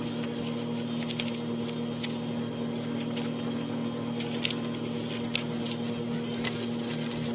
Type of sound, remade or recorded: recorded